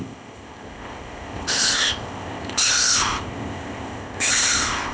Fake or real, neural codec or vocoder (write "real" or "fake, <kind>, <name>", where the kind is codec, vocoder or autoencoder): fake, codec, ZipCodec